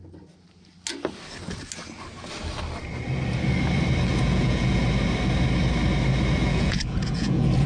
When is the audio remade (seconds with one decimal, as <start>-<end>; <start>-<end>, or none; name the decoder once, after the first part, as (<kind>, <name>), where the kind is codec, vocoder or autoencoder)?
4.1-4.8 (vocoder, Vocos); 6.4-7.7